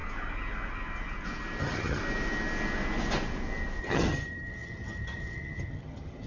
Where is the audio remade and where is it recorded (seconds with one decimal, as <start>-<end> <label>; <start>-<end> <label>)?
0.0-1.6 recorded; 1.6-2.0 remade; 2.0-3.8 recorded; 3.8-6.3 remade

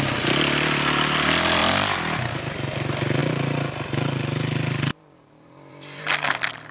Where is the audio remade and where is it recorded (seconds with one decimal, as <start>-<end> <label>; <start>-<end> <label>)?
0.0-6.7 recorded